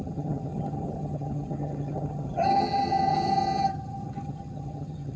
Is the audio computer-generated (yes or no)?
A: yes